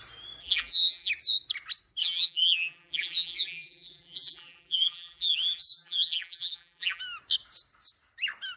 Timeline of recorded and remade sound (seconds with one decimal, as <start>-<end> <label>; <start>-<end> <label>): 0.0-0.4 recorded; 0.4-1.1 remade; 1.1-2.0 recorded; 2.0-7.0 remade; 7.0-8.6 recorded